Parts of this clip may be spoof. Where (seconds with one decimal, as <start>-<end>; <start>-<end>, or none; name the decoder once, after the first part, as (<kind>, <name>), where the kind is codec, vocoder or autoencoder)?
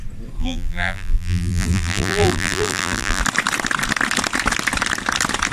0.4-3.2 (vocoder, BigVGAN v2)